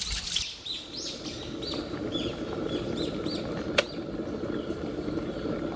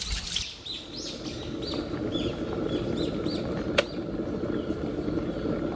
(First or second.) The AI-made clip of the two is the first